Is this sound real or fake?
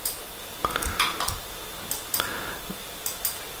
real